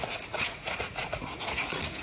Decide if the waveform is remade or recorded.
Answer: remade